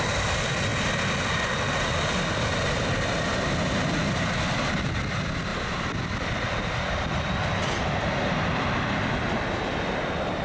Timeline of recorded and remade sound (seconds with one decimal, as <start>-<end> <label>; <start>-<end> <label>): 0.0-10.4 recorded